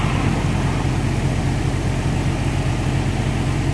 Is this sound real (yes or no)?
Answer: yes